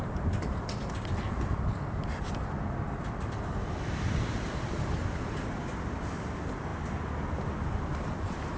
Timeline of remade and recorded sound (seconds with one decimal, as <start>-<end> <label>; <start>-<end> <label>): 0.0-8.6 recorded